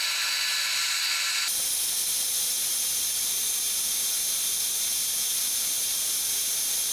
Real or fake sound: real